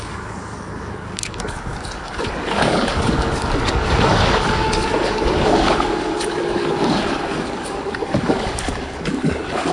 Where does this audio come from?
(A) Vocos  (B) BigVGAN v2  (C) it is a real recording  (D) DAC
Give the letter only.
D